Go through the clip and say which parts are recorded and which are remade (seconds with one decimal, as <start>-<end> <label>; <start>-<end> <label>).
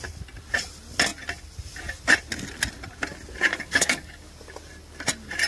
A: 0.0-3.5 recorded; 3.5-4.3 remade; 4.3-5.5 recorded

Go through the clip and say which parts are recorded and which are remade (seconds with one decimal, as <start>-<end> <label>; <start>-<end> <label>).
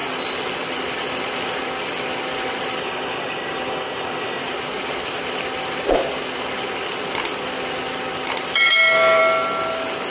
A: 0.0-2.8 recorded; 2.8-4.4 remade; 4.4-8.6 recorded; 8.6-9.2 remade; 9.2-10.1 recorded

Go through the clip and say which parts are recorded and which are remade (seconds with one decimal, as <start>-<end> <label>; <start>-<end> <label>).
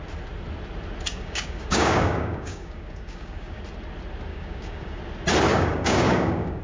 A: 0.0-1.1 recorded; 1.1-3.6 remade; 3.6-4.3 recorded; 4.3-5.0 remade; 5.0-5.5 recorded; 5.5-6.6 remade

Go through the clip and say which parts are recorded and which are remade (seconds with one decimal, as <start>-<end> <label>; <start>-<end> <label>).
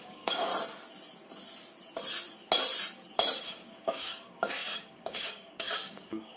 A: 0.0-0.5 remade; 0.5-3.4 recorded; 3.4-6.4 remade